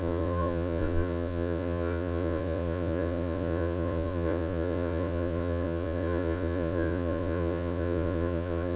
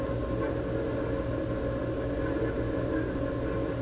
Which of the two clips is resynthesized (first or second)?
first